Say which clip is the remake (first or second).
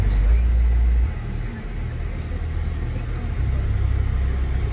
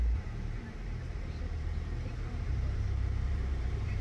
second